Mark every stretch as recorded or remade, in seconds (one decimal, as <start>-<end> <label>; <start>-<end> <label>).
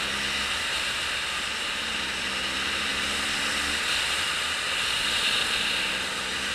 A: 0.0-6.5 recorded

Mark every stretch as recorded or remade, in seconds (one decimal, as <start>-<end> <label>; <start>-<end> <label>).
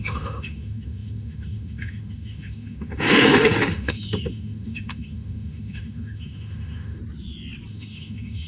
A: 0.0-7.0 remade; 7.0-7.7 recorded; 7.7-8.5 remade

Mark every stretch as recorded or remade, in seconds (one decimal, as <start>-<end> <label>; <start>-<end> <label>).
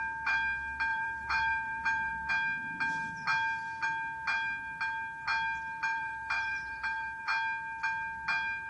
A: 0.0-0.9 recorded; 0.9-2.3 remade; 2.3-5.9 recorded; 5.9-7.2 remade; 7.2-8.7 recorded